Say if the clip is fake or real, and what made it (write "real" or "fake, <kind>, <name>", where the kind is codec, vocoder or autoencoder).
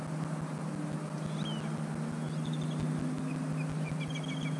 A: real